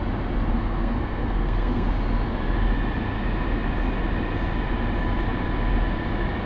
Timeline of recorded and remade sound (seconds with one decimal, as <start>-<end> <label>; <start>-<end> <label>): 0.0-0.5 recorded; 0.5-1.9 remade; 1.9-6.5 recorded